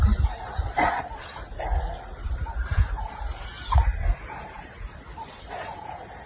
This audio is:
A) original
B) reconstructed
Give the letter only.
A